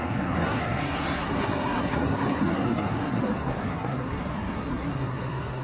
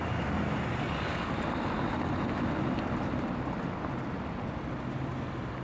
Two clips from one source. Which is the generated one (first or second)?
first